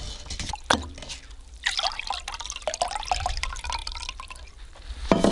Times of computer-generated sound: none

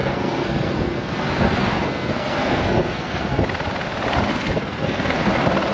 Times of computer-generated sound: 0.0-3.4 (codec, SNAC); 4.3-5.3

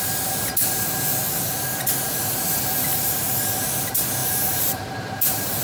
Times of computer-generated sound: 2.9-3.4 (vocoder, BigVGAN v2); 4.2-5.6